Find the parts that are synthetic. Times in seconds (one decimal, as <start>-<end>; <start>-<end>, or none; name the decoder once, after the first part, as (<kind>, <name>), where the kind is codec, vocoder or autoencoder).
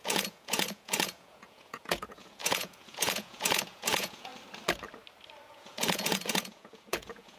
0.0-4.3 (vocoder, Vocos); 5.5-7.4